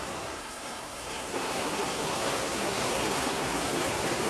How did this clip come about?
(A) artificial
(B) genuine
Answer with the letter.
A